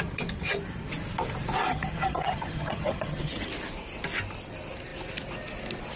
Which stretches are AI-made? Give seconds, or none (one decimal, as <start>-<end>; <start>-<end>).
1.6-3.5